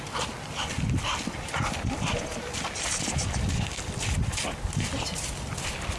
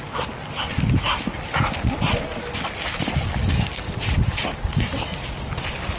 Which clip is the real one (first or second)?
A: second